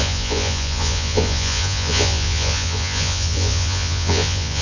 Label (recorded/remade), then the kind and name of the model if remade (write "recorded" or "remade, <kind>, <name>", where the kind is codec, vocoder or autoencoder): remade, vocoder, Vocos